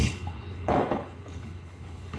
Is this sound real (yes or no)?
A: no